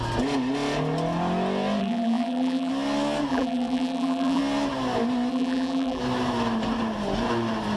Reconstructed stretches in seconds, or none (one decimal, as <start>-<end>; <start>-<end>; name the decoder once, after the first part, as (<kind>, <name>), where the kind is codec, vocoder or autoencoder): 1.8-2.7 (vocoder, BigVGAN v2); 3.3-4.4; 5.3-6.0

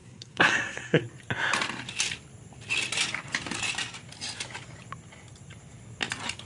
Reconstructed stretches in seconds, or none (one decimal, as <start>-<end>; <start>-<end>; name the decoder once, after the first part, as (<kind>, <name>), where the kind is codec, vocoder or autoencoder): 0.0-1.0 (codec, SNAC)

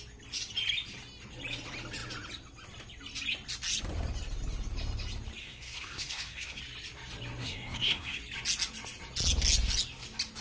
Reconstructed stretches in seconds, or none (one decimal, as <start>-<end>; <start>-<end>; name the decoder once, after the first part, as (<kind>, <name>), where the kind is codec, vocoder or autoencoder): 5.4-6.6 (codec, SNAC); 7.4-8.2

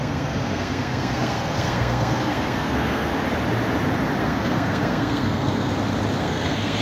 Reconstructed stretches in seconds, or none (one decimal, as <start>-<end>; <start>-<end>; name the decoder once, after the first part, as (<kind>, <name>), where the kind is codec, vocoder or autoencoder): 0.0-3.1 (codec, SNAC); 4.2-5.7; 6.2-6.8

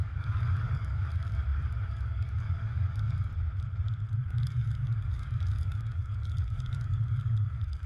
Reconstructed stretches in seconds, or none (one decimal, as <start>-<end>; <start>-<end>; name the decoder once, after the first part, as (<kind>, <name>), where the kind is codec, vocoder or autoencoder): 0.0-3.3 (codec, DAC); 4.1-7.9

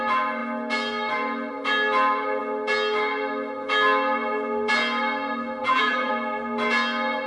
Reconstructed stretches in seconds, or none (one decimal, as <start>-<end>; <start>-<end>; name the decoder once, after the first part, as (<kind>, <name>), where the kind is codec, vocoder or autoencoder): 5.6-6.1 (vocoder, BigVGAN v2)

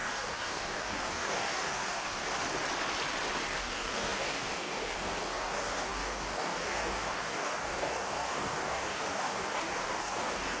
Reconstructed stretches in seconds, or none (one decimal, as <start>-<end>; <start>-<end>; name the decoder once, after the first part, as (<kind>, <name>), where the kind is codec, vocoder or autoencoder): 0.0-2.2 (codec, DAC); 3.6-10.6

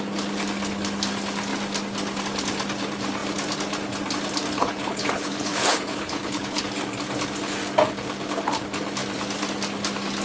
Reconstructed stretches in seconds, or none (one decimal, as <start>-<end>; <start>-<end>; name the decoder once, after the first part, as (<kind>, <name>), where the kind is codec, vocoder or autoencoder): 4.6-6.6 (codec, HILCodec)